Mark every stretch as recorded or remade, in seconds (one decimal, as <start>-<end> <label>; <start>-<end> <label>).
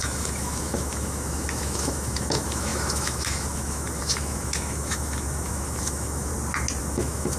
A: 0.0-6.3 remade; 6.3-6.8 recorded; 6.8-7.4 remade